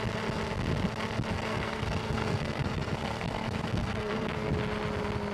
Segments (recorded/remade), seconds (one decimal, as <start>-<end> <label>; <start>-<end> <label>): 0.0-1.3 recorded; 1.3-4.5 remade; 4.5-5.3 recorded